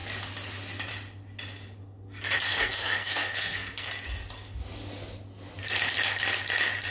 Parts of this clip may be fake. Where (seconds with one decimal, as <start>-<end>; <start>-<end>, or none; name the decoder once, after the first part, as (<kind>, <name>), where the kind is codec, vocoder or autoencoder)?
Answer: 2.5-3.9 (codec, SNAC)

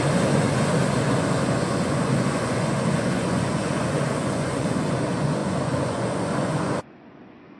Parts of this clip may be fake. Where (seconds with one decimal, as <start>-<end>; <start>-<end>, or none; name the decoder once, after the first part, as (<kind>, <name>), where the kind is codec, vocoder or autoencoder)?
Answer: 0.0-7.6 (vocoder, Vocos)

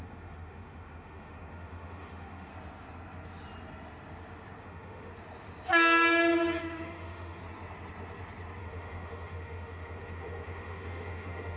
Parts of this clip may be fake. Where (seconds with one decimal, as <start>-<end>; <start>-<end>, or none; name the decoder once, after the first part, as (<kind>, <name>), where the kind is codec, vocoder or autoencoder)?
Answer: 0.0-2.5 (autoencoder, DAC-VAE); 4.6-5.1; 6.6-7.4; 8.6-11.6

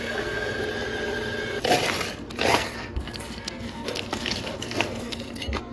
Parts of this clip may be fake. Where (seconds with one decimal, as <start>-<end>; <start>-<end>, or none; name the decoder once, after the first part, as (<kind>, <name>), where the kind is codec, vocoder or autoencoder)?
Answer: 0.0-0.6 (codec, SNAC); 2.5-5.7

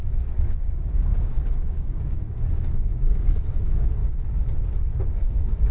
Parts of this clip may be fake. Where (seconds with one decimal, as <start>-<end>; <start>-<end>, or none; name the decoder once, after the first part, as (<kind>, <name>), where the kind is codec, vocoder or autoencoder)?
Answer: 0.0-4.0 (codec, DAC); 5.0-5.7

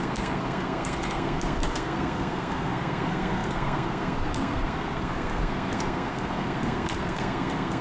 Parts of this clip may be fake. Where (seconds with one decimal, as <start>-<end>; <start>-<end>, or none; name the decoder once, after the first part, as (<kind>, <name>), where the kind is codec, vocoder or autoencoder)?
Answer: 0.0-7.8 (codec, SNAC)

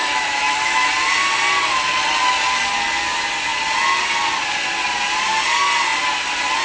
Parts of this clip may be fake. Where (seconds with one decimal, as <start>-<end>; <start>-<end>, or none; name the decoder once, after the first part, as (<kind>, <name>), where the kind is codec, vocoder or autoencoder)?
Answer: 0.0-0.9 (autoencoder, DAC-VAE)

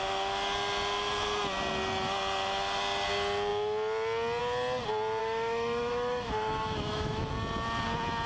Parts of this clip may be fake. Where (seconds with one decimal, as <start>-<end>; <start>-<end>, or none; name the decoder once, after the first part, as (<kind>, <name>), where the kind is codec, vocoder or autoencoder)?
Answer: 5.2-7.3 (autoencoder, DAC-VAE)